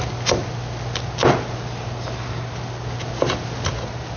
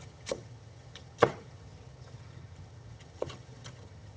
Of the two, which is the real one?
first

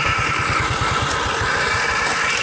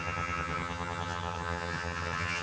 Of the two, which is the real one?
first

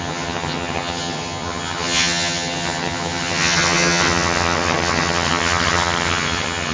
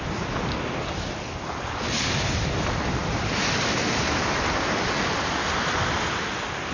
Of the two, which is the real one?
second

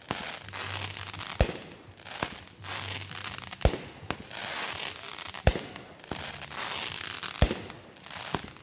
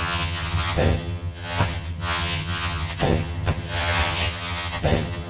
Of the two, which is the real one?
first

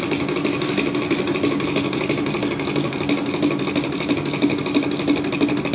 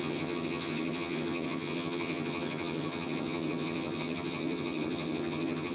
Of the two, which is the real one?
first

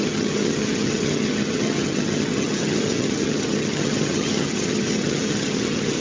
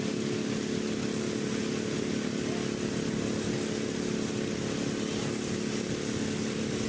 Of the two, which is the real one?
second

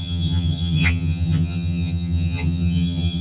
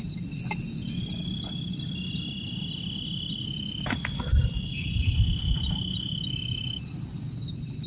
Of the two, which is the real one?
second